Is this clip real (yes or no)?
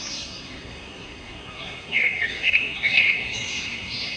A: no